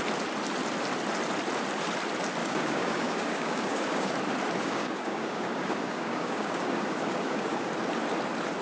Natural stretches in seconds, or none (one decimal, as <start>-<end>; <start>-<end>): 0.0-2.4; 4.1-4.6; 7.7-8.6